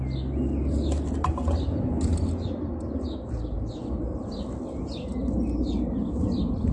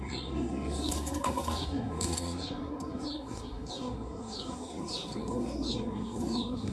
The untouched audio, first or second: first